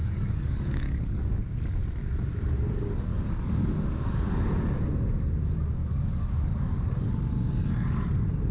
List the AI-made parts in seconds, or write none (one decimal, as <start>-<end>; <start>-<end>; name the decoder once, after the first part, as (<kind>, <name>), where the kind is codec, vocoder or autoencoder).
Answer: 0.0-1.4 (codec, DAC); 3.1-3.7; 5.8-7.3

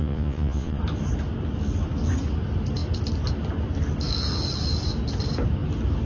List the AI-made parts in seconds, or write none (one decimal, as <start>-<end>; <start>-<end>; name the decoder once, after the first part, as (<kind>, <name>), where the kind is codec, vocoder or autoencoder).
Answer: 0.0-0.8 (vocoder, Vocos)

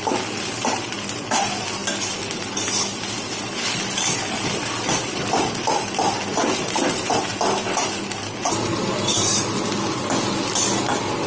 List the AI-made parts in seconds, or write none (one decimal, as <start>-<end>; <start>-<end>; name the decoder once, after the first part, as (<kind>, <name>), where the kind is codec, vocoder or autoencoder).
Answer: none